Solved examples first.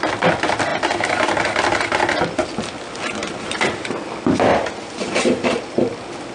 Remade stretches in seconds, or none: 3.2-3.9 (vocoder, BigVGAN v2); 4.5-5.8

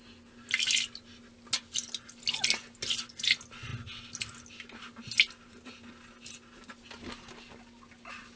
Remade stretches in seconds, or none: none

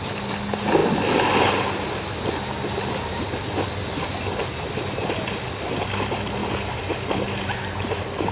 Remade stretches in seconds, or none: 6.4-7.1 (vocoder, BigVGAN v2)

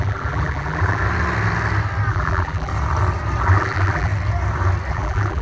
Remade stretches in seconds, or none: 0.0-1.0 (vocoder, BigVGAN v2); 2.1-2.7; 3.4-4.1; 4.9-5.4

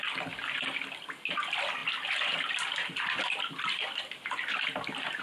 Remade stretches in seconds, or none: none

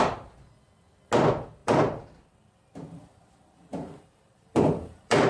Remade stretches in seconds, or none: 1.6-2.2 (vocoder, BigVGAN v2); 3.7-5.3

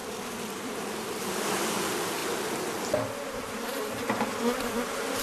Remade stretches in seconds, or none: 0.0-1.2 (vocoder, BigVGAN v2)

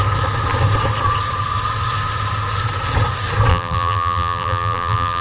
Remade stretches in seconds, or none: 3.5-5.2 (vocoder, BigVGAN v2)